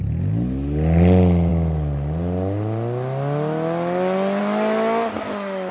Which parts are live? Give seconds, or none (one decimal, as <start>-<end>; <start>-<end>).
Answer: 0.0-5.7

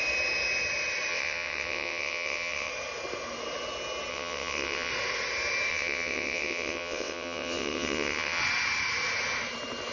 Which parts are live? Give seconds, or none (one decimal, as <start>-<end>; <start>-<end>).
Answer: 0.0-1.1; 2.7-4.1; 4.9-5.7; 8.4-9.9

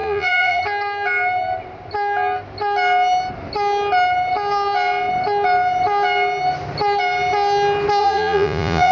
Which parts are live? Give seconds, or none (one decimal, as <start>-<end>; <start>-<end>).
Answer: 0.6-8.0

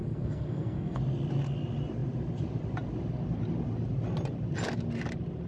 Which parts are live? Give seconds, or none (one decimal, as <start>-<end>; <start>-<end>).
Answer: 1.0-5.5

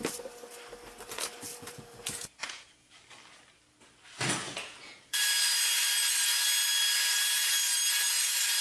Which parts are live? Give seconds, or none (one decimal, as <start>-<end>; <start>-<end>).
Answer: 0.0-1.5; 2.9-4.4; 5.2-8.6

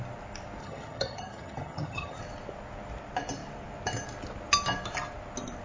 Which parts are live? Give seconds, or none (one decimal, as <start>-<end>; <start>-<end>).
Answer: 0.0-0.6; 2.2-5.6

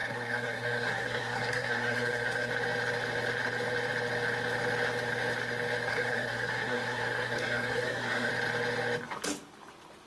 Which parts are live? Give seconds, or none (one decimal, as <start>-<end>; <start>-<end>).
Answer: 2.5-5.9; 8.3-10.1

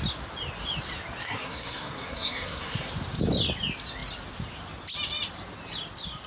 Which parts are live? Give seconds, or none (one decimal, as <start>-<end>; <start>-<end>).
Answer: 0.0-1.2; 2.9-6.3